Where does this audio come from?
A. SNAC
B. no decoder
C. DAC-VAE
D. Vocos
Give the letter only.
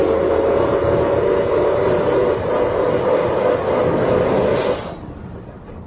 B